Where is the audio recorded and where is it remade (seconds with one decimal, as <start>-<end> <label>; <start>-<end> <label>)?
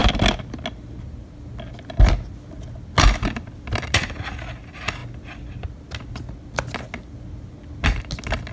0.0-8.5 recorded